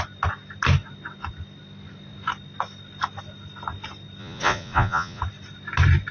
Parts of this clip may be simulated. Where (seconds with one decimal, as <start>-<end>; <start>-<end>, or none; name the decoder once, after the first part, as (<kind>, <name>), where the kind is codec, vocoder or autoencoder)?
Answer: 4.2-5.2 (vocoder, Vocos)